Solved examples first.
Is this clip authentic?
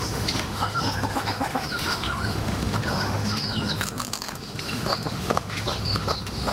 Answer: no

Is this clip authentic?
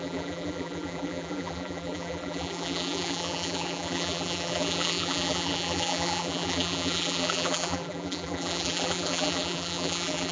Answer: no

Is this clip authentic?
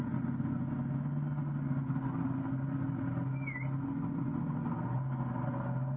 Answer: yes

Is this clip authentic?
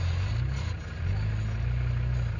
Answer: yes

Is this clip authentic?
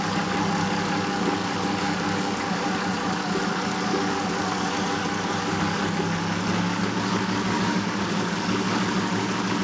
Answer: no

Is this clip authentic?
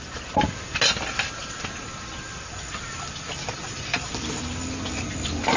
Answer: yes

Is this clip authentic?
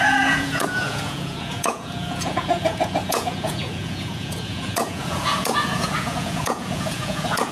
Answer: no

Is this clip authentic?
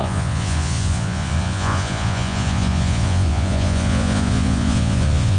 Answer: no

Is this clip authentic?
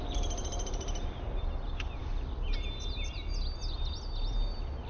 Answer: yes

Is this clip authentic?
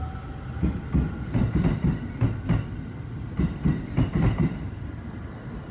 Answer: yes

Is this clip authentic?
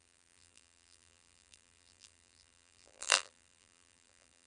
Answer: no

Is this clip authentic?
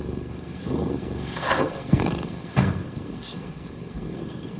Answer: no